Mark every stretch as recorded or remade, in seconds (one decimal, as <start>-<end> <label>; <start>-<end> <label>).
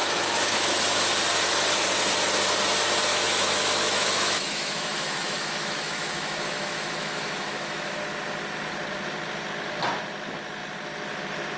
0.0-0.8 remade; 0.8-3.1 recorded; 3.1-8.0 remade; 8.0-11.6 recorded